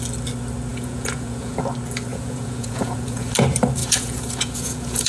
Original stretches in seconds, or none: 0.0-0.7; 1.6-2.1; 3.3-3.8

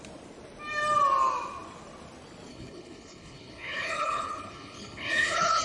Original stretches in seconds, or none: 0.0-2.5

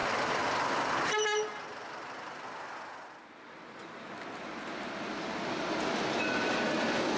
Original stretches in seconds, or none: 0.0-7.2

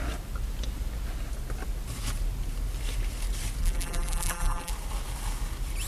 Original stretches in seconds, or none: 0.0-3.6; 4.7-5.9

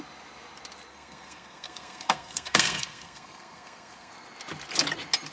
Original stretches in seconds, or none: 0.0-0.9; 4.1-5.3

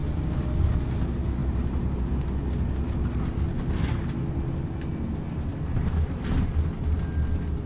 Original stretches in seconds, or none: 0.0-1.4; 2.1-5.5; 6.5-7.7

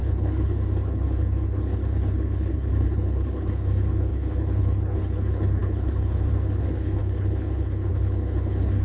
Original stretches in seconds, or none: none

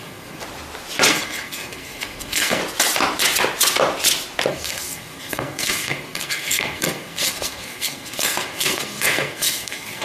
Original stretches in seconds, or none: 0.4-1.1; 2.6-4.5